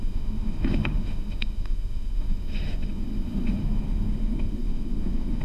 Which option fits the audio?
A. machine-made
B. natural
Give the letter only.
A